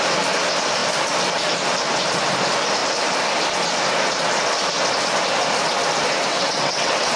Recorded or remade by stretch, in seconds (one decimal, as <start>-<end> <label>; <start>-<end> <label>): 0.0-6.3 recorded; 6.3-7.2 remade

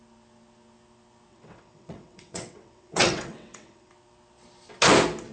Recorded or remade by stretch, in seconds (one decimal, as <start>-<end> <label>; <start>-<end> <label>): 0.0-1.3 recorded; 1.3-3.9 remade; 3.9-5.3 recorded